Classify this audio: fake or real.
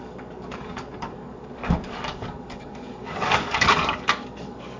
fake